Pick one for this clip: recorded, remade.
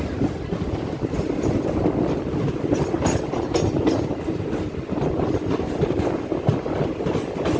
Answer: recorded